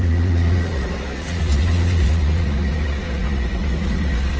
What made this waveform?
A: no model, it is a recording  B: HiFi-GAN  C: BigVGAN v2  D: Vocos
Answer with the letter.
D